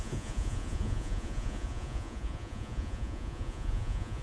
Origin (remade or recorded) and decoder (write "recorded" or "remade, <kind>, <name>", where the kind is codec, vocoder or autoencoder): remade, vocoder, Vocos